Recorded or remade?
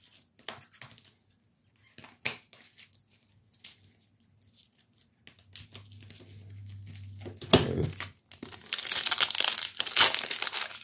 recorded